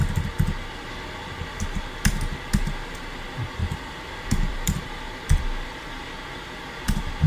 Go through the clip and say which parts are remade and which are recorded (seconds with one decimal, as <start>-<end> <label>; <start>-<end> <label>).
0.0-0.7 recorded; 0.7-7.3 remade

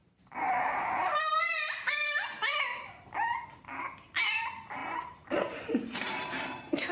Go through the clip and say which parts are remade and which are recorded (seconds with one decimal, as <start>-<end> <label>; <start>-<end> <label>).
0.0-1.9 remade; 1.9-2.5 recorded; 2.5-3.1 remade; 3.1-4.8 recorded; 4.8-6.9 remade